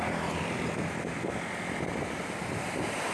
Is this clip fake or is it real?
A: real